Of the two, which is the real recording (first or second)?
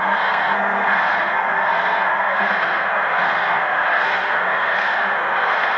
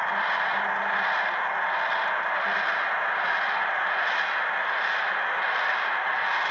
second